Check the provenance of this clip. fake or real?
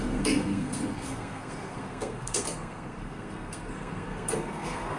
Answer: fake